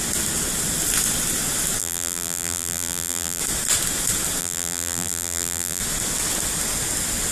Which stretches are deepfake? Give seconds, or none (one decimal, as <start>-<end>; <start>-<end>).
1.8-3.4; 4.4-5.8